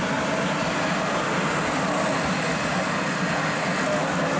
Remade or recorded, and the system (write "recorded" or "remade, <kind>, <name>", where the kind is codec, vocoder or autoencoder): recorded